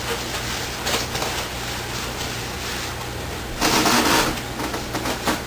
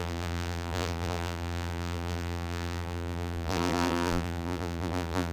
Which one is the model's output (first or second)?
second